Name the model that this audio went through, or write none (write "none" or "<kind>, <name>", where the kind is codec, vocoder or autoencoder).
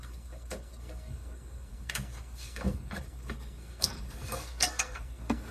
codec, SNAC